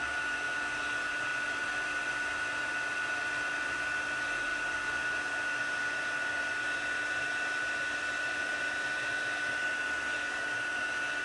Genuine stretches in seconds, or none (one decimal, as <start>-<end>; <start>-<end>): 0.0-11.2